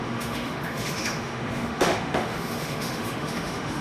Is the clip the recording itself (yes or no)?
no